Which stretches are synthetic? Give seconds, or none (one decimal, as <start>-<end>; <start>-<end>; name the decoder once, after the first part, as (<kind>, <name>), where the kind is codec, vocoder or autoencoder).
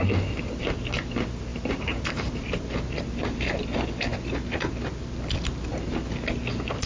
1.5-2.4 (vocoder, BigVGAN v2)